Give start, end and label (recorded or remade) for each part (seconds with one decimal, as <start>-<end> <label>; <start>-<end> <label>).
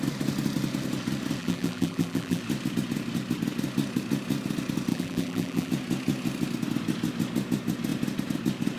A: 0.0-1.4 recorded; 1.4-2.4 remade; 2.4-4.9 recorded; 4.9-5.7 remade; 5.7-8.8 recorded